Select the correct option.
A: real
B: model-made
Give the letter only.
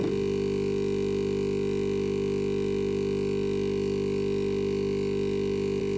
A